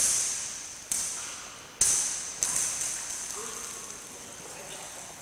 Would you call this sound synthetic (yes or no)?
no